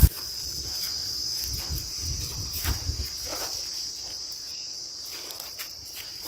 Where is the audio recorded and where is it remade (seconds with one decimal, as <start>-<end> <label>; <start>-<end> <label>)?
0.0-6.3 recorded